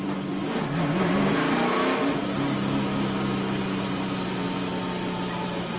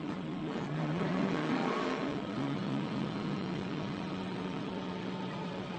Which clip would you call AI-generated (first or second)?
second